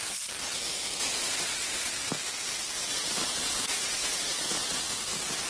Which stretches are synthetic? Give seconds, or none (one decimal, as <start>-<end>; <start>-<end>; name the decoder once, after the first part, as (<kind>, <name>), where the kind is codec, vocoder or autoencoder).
1.0-1.9 (vocoder, Vocos); 2.9-4.8